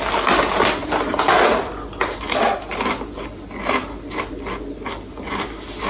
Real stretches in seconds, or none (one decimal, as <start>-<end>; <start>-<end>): 0.0-5.9